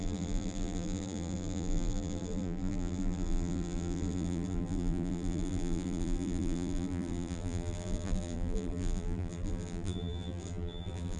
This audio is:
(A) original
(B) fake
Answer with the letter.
B